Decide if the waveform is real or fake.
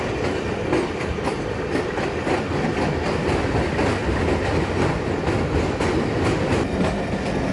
real